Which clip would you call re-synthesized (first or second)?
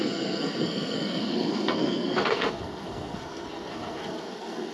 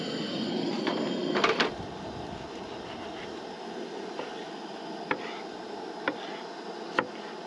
first